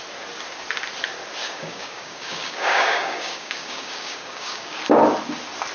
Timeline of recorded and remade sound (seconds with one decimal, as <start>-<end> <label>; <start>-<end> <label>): 0.0-1.4 recorded; 1.4-4.8 remade; 4.8-5.7 recorded